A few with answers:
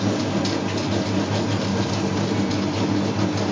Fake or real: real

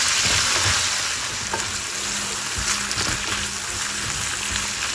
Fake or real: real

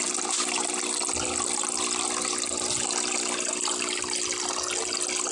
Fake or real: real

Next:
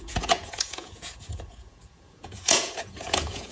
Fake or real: fake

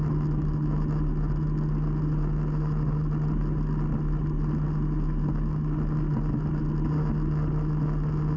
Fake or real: real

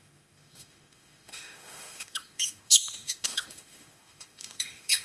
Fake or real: fake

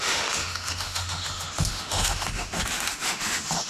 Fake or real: fake